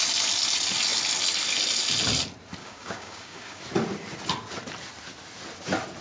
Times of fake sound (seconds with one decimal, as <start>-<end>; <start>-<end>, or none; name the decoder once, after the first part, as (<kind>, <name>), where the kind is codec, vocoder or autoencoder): 2.6-3.6 (codec, DAC)

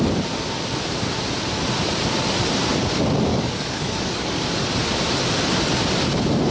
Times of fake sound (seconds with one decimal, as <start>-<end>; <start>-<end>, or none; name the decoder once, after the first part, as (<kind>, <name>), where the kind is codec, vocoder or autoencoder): 3.3-4.4 (codec, DAC)

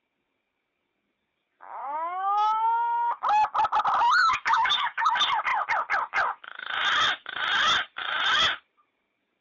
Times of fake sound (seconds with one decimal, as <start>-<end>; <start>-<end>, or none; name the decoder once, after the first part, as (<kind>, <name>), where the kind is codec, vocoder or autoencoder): 1.8-3.2 (codec, DAC); 4.2-5.1

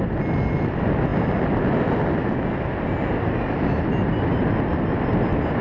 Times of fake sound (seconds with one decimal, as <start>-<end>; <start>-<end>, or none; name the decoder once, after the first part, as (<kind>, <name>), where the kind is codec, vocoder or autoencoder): none

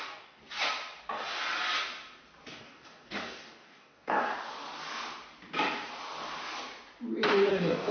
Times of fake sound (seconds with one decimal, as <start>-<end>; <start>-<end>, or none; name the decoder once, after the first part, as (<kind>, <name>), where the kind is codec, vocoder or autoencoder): 0.0-0.4 (codec, DAC); 2.5-4.3; 7.5-7.9

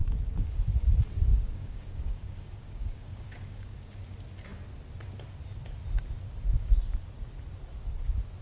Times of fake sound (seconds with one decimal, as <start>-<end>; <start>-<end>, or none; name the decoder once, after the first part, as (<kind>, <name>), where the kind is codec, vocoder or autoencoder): 0.0-0.5 (codec, DAC); 1.3-4.0